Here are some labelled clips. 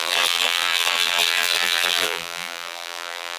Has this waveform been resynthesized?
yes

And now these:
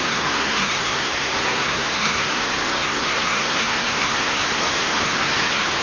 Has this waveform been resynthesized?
yes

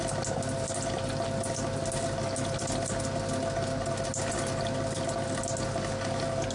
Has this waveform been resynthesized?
no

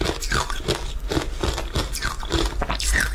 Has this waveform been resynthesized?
no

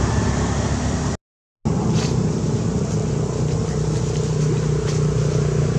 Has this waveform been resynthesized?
no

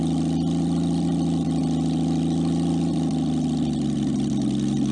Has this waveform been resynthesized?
no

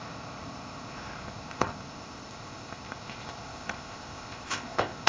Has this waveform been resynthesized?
yes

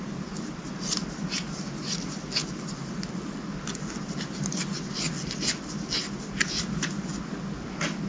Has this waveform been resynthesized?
no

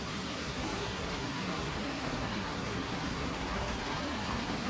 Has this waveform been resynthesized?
yes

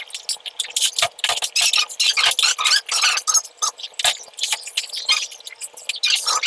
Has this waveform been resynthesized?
no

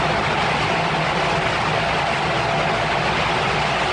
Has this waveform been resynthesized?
no